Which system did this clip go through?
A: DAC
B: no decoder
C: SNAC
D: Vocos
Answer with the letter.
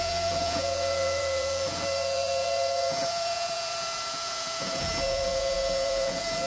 D